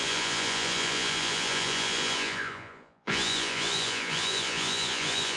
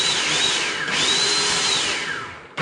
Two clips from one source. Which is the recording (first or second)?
second